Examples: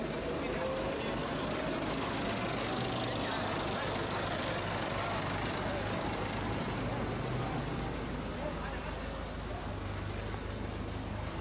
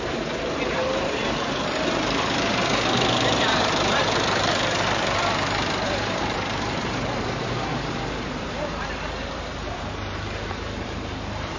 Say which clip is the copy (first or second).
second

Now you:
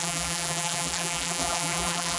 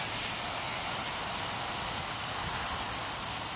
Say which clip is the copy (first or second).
first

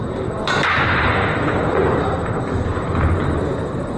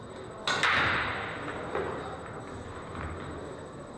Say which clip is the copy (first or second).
first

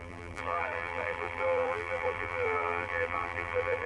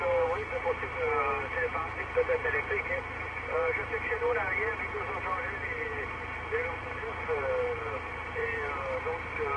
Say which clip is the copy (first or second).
first